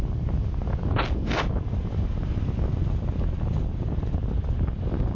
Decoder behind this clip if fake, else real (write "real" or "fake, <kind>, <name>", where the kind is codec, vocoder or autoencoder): real